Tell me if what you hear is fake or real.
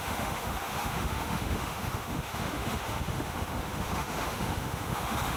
fake